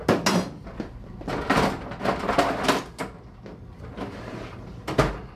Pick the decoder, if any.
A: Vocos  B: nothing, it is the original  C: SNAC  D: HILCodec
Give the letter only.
B